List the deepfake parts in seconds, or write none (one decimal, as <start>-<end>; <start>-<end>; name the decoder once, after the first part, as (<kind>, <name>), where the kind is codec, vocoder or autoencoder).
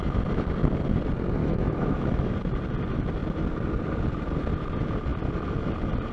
1.4-2.3 (autoencoder, DAC-VAE)